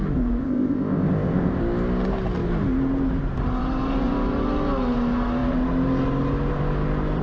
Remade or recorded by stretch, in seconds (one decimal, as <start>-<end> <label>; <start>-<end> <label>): 0.0-0.4 recorded; 0.4-1.6 remade; 1.6-7.2 recorded